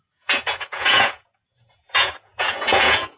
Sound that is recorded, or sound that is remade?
remade